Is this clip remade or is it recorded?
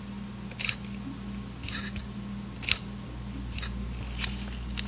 recorded